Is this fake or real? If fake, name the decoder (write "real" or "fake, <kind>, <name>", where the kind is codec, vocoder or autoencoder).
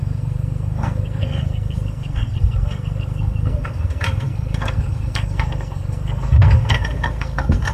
fake, codec, SNAC